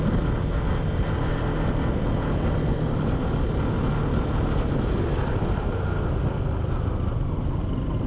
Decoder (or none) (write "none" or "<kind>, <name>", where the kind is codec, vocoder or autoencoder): none